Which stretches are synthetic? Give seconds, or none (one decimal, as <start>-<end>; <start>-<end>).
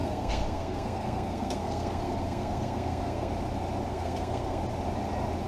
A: 0.0-3.3; 3.9-4.6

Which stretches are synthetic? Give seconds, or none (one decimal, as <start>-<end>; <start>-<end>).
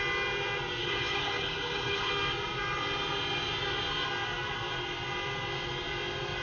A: 0.8-2.1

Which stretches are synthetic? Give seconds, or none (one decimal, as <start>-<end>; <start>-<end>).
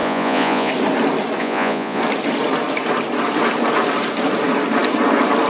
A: 0.0-0.7; 1.4-2.0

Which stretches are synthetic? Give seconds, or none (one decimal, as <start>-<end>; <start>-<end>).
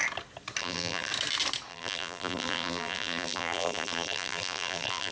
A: 0.6-1.1; 1.7-5.1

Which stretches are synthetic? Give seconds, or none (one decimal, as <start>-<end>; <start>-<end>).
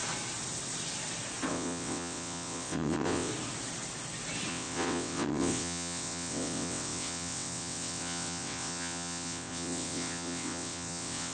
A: 1.5-3.3; 4.5-11.3